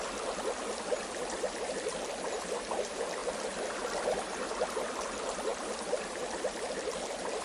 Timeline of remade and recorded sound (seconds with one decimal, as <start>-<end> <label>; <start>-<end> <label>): 0.0-7.4 recorded